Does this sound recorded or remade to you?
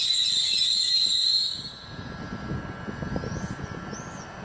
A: recorded